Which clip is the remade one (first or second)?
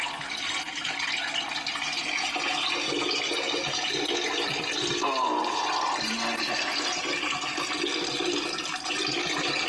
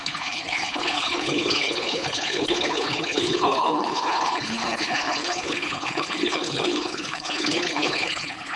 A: second